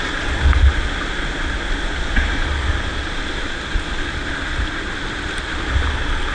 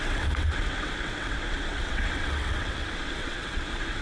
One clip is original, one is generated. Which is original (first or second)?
first